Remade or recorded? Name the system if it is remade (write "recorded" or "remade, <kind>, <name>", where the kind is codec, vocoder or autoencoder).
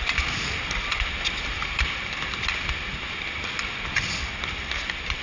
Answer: recorded